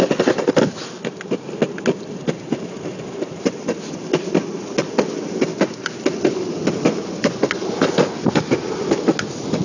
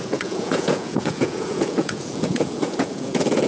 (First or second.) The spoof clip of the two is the second